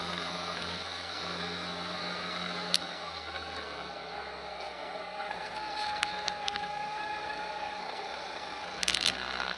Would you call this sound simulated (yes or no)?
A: yes